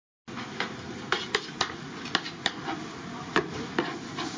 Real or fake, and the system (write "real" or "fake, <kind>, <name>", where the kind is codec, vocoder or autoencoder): real